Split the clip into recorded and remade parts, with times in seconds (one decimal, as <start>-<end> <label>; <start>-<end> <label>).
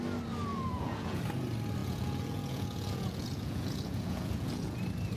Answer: 0.0-0.5 recorded; 0.5-1.2 remade; 1.2-1.8 recorded; 1.8-4.8 remade; 4.8-5.2 recorded